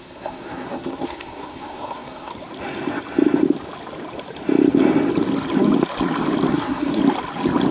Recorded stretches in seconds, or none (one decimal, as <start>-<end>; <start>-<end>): 2.3-6.5; 7.0-7.7